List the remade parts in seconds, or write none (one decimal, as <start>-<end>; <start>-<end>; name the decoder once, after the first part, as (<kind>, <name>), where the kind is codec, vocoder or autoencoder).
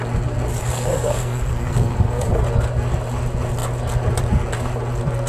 0.6-2.4 (codec, SNAC)